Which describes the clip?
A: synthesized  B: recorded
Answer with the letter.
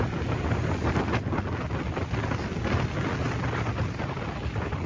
B